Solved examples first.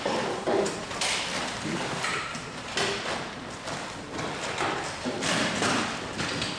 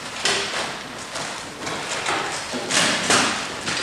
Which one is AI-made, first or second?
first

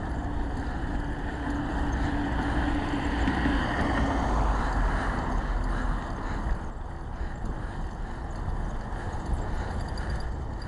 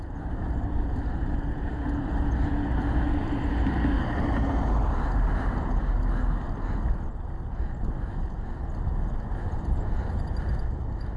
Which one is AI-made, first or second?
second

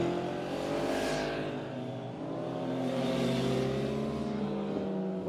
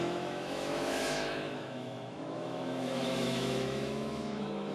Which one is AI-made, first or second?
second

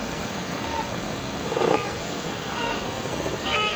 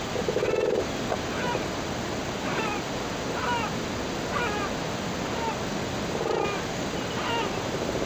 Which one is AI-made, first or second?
first